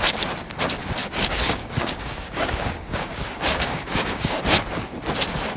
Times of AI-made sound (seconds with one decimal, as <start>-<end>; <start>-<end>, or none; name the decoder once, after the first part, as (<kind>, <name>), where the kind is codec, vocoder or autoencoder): 1.0-4.4 (codec, DAC)

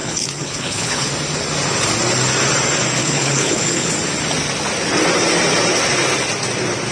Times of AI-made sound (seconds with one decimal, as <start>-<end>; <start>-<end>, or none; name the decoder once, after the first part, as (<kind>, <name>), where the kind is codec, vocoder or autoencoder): 0.0-1.1 (codec, HILCodec); 3.0-3.9

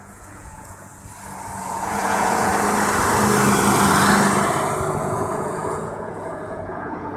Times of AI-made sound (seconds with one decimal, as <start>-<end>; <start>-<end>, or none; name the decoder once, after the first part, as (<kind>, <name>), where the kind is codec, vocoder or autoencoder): 0.0-0.9 (vocoder, Vocos); 1.6-2.5; 5.0-7.2

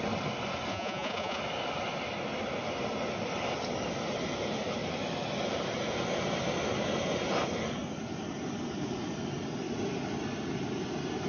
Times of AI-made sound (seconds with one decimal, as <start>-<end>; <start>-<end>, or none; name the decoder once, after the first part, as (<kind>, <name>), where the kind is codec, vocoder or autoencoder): 0.7-1.4 (vocoder, Vocos)

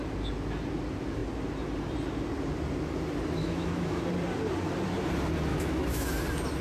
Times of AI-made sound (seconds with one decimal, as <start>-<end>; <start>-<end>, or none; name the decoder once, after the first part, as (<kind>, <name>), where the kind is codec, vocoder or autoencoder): 3.4-4.0 (autoencoder, DAC-VAE); 5.5-6.1